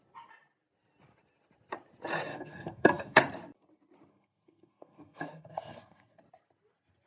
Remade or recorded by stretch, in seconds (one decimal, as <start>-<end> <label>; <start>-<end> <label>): 0.0-2.3 recorded; 2.3-3.2 remade; 3.2-4.1 recorded; 4.1-6.2 remade; 6.2-7.1 recorded